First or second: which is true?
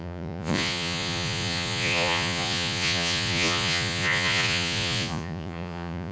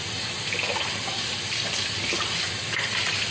second